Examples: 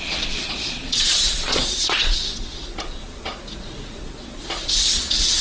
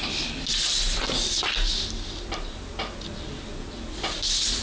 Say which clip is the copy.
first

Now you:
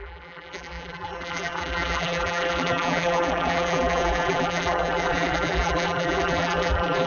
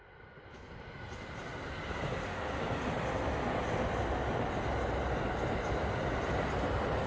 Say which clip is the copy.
first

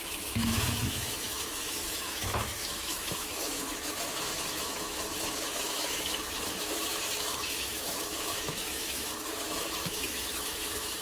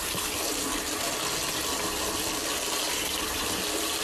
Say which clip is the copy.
first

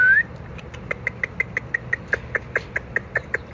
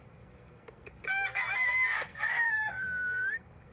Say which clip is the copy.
second